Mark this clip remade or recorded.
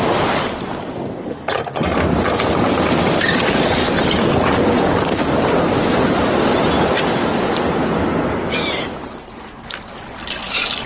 recorded